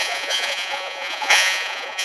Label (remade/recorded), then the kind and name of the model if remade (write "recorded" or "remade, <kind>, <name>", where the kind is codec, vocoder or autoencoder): remade, vocoder, Vocos